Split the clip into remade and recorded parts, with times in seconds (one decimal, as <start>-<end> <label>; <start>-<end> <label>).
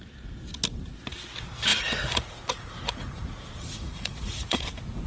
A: 0.0-1.7 recorded; 1.7-4.6 remade; 4.6-5.1 recorded